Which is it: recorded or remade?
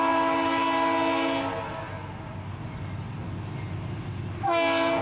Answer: recorded